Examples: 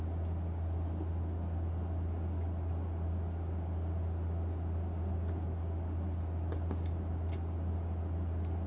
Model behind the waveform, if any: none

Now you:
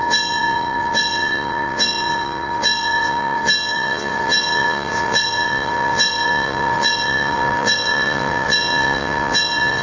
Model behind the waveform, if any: vocoder, WaveNeXt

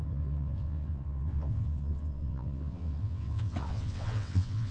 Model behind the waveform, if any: vocoder, WaveNeXt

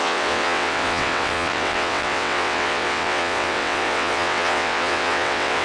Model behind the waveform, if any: vocoder, WaveNeXt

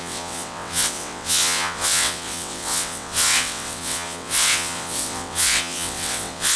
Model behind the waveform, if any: vocoder, WaveNeXt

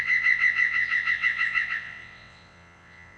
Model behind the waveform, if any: vocoder, WaveNeXt